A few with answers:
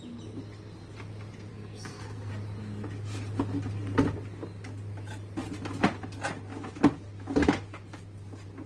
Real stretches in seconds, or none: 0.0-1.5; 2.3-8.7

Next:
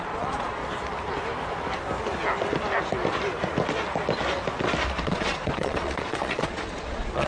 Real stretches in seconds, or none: 0.6-5.0

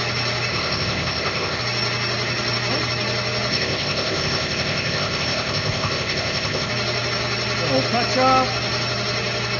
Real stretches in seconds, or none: 0.0-0.5; 1.6-3.5; 6.7-9.6

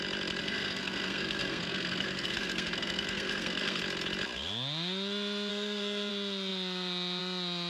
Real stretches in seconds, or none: 0.0-0.4; 3.8-5.5; 6.1-7.7